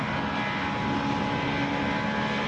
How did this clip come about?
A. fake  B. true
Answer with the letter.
B